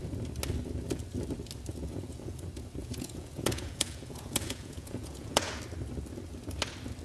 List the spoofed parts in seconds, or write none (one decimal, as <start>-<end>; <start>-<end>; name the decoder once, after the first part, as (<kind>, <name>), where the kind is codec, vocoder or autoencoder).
1.7-2.4 (vocoder, Vocos); 2.8-5.6